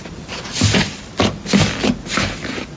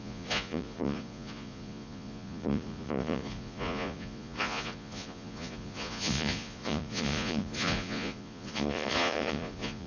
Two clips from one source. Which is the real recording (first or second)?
first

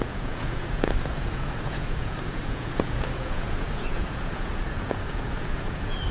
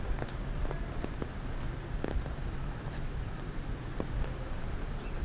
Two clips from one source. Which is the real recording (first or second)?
second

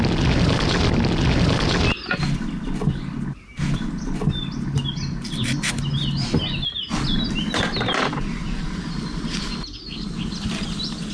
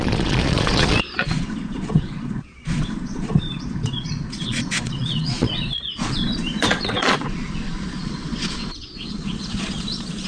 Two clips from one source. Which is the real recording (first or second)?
first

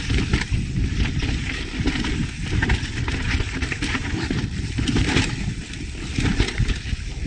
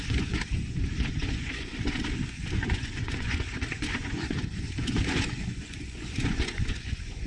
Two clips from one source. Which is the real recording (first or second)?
first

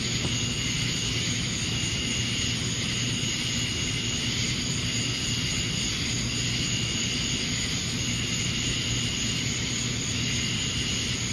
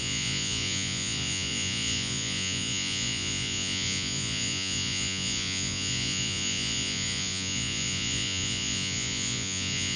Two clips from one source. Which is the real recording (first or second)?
first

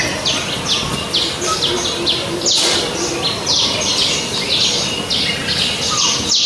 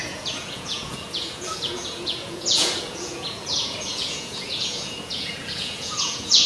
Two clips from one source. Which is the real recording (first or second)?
first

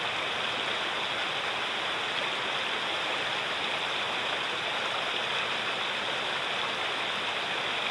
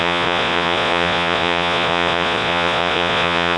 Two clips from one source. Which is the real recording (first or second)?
first